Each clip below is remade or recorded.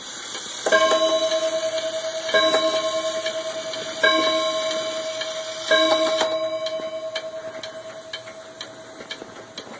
recorded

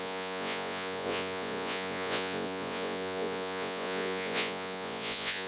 remade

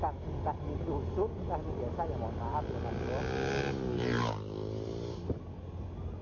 recorded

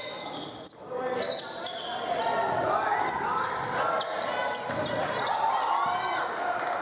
recorded